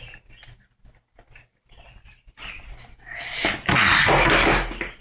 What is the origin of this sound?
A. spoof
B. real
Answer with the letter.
B